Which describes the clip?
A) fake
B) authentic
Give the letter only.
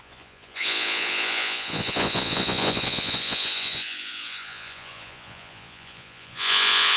A